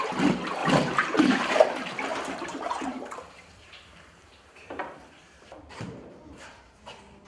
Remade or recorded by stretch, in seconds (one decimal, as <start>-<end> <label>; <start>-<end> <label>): 0.0-0.6 recorded; 0.6-1.6 remade; 1.6-2.1 recorded; 2.1-6.5 remade; 6.5-7.3 recorded